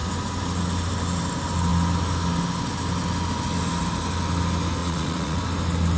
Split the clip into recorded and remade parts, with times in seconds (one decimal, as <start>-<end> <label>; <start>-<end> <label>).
0.0-4.8 recorded; 4.8-5.4 remade; 5.4-6.0 recorded